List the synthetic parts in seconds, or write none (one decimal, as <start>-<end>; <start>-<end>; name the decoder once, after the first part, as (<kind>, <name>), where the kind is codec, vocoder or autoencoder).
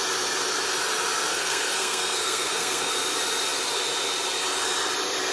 1.3-2.9 (codec, SNAC)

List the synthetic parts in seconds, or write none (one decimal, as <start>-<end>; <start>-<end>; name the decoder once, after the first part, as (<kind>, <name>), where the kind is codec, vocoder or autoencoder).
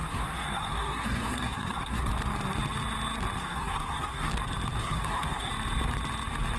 0.0-2.1 (codec, SNAC); 3.4-4.3; 4.8-5.5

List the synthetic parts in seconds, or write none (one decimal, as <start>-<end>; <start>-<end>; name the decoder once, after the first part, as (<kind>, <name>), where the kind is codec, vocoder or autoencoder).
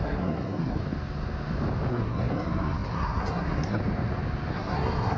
0.0-0.8 (codec, SNAC); 1.9-3.8; 4.5-5.2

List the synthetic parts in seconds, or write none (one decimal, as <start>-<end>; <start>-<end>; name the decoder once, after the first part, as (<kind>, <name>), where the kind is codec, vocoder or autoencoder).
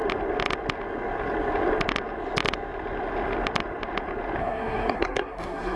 4.4-5.8 (codec, SNAC)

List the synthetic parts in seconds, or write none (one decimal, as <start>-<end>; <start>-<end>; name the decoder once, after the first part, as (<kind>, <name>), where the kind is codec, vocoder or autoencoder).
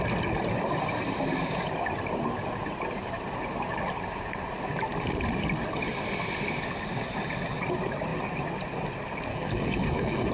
9.3-10.3 (codec, SNAC)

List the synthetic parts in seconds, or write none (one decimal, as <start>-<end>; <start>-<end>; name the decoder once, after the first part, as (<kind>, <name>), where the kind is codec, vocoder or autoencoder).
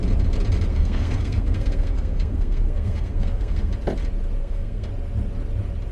0.7-3.7 (codec, SNAC); 4.4-4.9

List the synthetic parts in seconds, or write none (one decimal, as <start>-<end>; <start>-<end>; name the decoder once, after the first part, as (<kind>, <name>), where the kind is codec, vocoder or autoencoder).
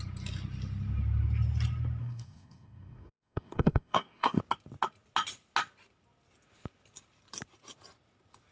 2.0-4.4 (codec, SNAC)